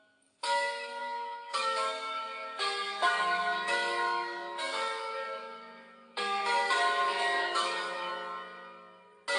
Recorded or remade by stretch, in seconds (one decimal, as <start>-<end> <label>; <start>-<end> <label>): 0.0-8.1 remade; 8.1-9.4 recorded